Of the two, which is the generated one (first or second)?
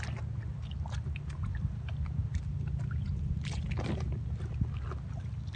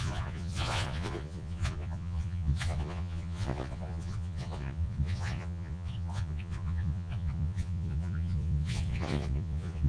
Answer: second